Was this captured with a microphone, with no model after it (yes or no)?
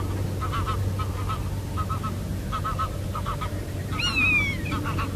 yes